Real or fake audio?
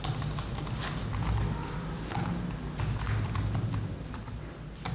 real